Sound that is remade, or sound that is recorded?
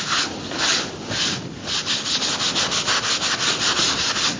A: recorded